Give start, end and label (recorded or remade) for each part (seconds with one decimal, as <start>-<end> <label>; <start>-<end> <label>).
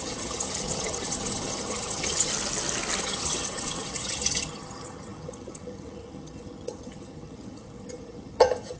0.0-2.3 remade; 2.3-3.0 recorded; 3.0-8.8 remade